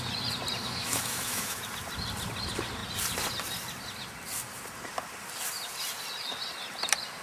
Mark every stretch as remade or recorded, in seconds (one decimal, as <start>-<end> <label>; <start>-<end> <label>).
0.0-0.6 recorded; 0.6-1.6 remade; 1.6-7.2 recorded